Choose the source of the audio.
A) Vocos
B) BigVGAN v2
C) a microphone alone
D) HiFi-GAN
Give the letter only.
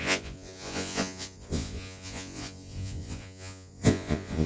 A